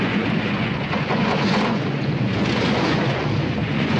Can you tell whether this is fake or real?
fake